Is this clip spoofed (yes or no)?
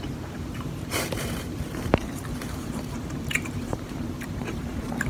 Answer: yes